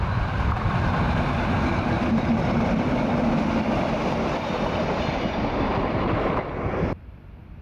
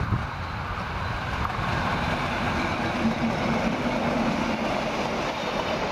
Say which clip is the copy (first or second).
first